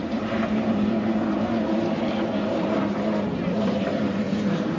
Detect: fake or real fake